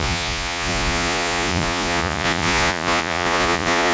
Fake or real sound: fake